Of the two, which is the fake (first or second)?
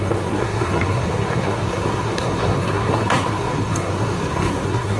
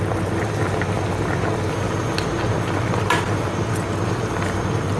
first